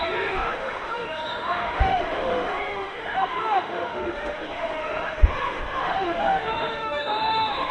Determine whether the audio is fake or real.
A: fake